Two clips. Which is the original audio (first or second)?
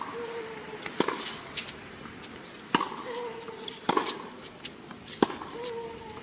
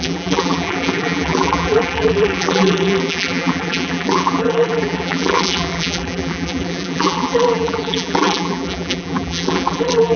first